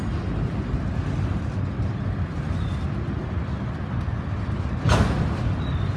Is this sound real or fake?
real